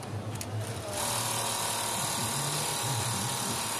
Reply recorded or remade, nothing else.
recorded